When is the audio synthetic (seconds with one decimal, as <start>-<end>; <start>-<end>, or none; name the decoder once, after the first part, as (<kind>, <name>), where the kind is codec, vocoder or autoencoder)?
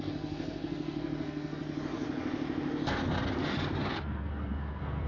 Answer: 0.0-1.6 (codec, SNAC); 3.9-5.1